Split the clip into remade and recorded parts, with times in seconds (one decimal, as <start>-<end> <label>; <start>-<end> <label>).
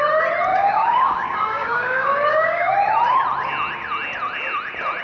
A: 0.0-0.5 recorded; 0.5-2.7 remade; 2.7-5.0 recorded